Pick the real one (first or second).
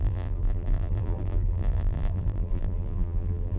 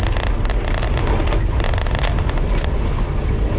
second